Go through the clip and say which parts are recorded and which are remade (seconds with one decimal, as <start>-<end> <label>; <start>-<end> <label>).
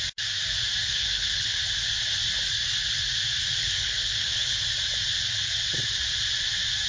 0.0-0.8 recorded; 0.8-1.6 remade; 1.6-3.6 recorded; 3.6-4.5 remade; 4.5-6.9 recorded